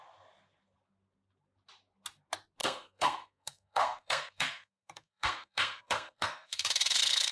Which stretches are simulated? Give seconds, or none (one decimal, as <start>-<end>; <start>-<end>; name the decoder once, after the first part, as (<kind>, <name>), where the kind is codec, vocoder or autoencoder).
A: 2.6-7.3 (codec, SNAC)